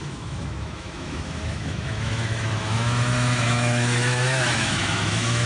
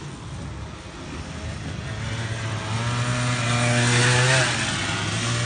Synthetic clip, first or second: first